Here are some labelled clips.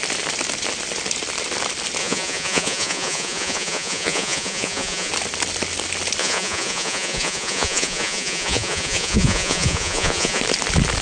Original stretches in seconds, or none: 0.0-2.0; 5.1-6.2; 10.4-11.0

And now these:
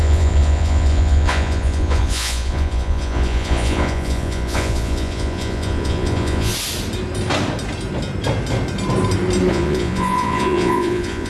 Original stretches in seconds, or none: 6.5-9.5

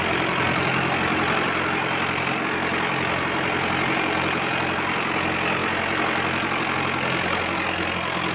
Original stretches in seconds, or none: 0.0-8.3

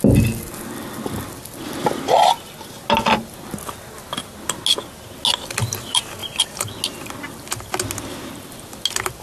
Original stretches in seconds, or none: 0.0-9.2

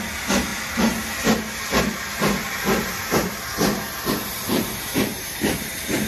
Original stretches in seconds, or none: 0.0-4.5